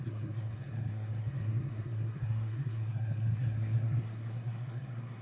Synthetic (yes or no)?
yes